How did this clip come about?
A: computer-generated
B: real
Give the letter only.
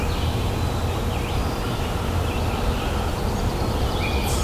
B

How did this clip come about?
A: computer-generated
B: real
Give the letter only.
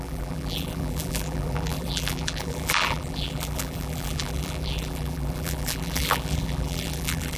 A